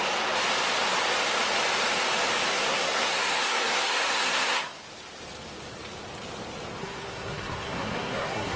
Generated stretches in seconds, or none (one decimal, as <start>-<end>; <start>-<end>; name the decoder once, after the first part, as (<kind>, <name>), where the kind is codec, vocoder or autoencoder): 2.5-4.8 (codec, SNAC); 6.8-8.6